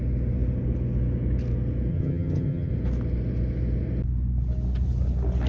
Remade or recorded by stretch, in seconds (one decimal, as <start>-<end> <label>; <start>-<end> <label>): 0.0-1.9 recorded; 1.9-2.7 remade; 2.7-5.5 recorded